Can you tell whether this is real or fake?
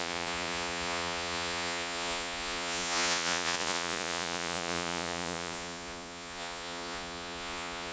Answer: fake